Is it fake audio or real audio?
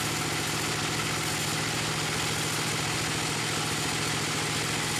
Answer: real